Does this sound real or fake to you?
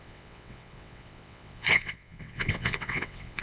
fake